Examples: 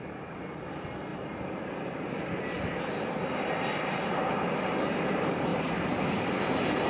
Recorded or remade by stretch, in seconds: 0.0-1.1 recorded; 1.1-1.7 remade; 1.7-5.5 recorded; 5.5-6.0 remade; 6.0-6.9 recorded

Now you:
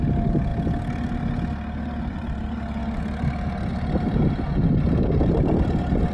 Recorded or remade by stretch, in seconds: 0.0-6.1 recorded